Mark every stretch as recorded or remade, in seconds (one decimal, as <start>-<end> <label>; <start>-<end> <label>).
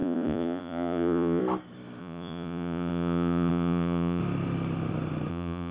0.0-1.4 remade; 1.4-2.0 recorded; 2.0-4.2 remade; 4.2-5.3 recorded; 5.3-5.7 remade